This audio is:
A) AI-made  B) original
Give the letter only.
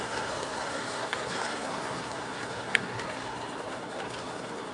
A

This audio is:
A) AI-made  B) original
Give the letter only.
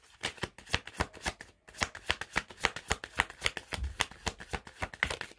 B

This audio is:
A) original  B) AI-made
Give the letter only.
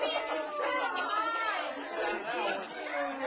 A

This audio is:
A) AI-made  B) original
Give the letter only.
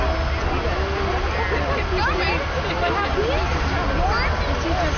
B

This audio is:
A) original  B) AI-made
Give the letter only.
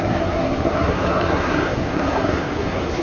B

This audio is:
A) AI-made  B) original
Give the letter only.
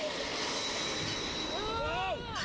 B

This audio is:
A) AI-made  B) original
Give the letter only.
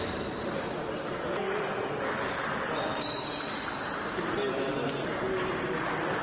B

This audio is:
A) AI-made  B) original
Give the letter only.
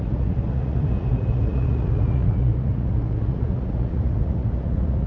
A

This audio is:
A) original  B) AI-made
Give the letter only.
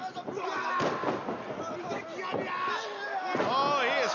A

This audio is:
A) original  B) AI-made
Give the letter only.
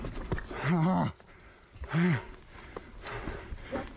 A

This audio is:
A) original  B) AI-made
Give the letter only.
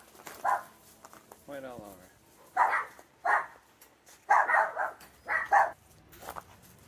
A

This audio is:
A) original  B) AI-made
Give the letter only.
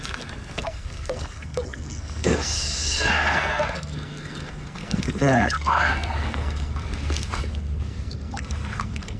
B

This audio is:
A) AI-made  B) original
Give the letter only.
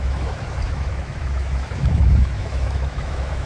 A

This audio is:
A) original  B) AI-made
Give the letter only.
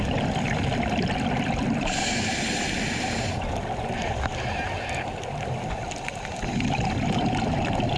A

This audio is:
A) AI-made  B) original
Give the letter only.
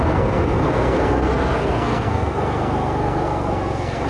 A